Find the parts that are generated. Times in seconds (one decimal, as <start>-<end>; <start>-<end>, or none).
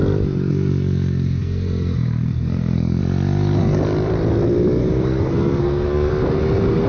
0.5-3.0; 4.8-6.1